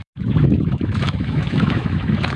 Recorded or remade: remade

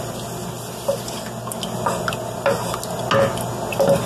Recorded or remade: recorded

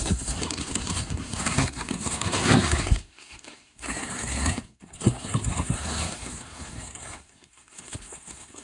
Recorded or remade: remade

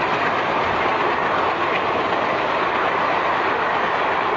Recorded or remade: recorded